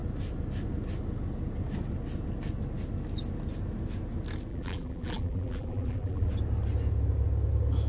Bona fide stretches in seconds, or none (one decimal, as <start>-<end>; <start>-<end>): 0.0-4.5; 6.3-7.9